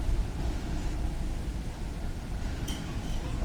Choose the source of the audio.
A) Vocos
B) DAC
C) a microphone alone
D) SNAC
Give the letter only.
C